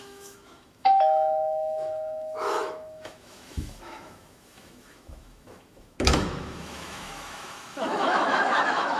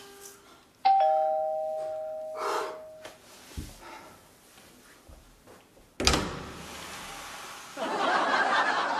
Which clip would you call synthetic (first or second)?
first